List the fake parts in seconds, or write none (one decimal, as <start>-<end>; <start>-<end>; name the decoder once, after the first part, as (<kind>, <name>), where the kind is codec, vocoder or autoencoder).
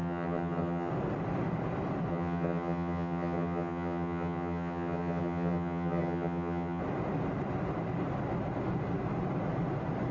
0.0-0.9 (vocoder, HiFi-GAN); 2.1-6.8